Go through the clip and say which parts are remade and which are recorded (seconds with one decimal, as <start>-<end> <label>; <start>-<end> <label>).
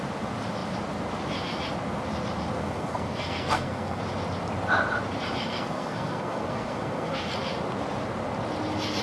0.0-2.6 recorded; 2.6-4.0 remade; 4.0-5.4 recorded; 5.4-7.3 remade; 7.3-9.0 recorded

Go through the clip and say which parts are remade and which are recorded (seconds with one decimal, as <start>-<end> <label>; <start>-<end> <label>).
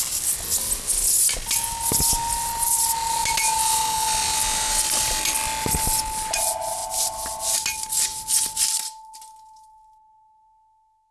0.0-11.1 recorded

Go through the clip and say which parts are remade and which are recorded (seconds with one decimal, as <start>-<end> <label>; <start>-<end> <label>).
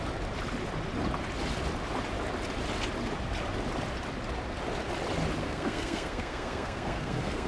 0.0-5.4 recorded; 5.4-7.5 remade